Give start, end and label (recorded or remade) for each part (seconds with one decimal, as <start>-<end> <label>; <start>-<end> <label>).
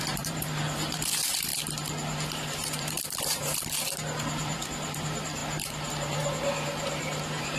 0.0-1.5 remade; 1.5-2.3 recorded; 2.3-5.4 remade; 5.4-5.9 recorded; 5.9-7.6 remade